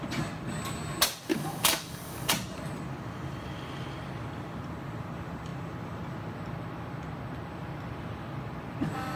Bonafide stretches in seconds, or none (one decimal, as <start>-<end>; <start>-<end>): 0.0-1.3; 2.3-9.2

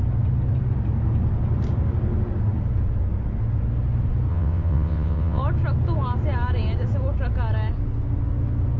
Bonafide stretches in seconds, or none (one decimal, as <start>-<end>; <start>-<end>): 0.0-4.3; 5.4-8.8

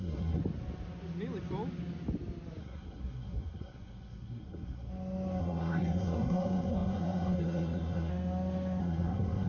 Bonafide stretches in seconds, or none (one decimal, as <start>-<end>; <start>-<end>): 0.4-2.6; 4.9-5.4; 8.1-8.8

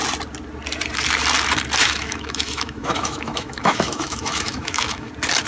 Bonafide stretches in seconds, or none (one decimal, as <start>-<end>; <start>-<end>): 0.0-1.8; 5.1-5.5

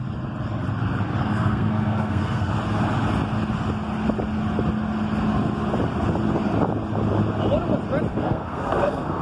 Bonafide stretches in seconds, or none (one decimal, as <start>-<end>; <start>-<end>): 0.0-1.2; 2.6-8.1

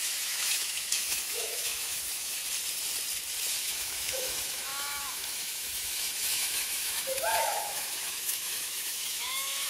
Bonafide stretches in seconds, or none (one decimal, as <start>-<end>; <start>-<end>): 2.4-3.6

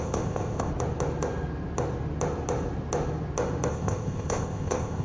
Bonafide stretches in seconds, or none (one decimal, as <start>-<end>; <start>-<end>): 0.7-3.7

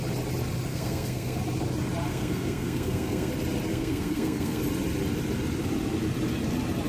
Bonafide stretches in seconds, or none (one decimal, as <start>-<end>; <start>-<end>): 0.0-0.7; 1.4-2.1; 3.3-3.7; 4.6-6.9